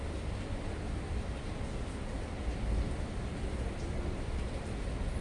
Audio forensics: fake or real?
real